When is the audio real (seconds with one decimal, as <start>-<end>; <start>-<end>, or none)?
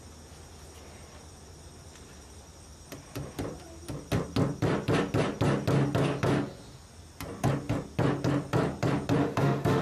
0.0-9.2